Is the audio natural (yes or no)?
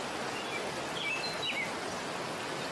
yes